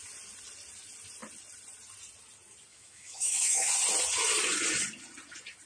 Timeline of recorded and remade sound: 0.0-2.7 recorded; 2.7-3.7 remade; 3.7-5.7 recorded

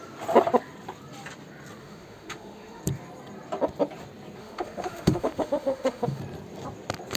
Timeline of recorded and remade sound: 0.0-1.8 recorded; 1.8-2.8 remade; 2.8-4.4 recorded; 4.4-6.2 remade; 6.2-7.2 recorded

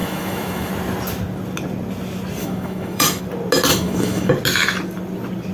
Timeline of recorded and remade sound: 0.0-0.7 remade; 0.7-2.4 recorded; 2.4-3.2 remade; 3.2-3.7 recorded; 3.7-4.3 remade; 4.3-5.5 recorded

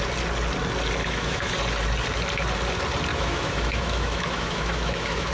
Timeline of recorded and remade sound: 0.0-1.0 recorded; 1.0-1.5 remade; 1.5-3.1 recorded; 3.1-5.3 remade

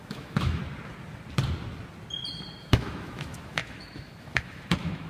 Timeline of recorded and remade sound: 0.0-0.6 remade; 0.6-2.6 recorded; 2.6-5.1 remade